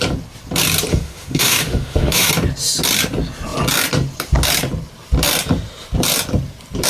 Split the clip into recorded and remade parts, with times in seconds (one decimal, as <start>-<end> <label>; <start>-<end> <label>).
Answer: 0.0-0.9 recorded; 0.9-2.3 remade; 2.3-6.9 recorded